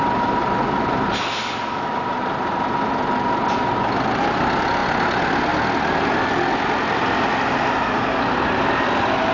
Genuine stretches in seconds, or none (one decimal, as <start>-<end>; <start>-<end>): 0.0-9.3